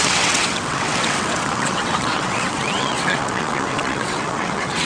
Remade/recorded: remade